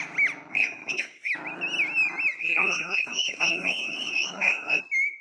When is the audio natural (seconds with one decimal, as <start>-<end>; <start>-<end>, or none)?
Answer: 0.0-0.5; 1.3-2.4; 4.8-5.2